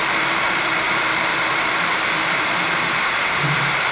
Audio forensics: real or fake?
fake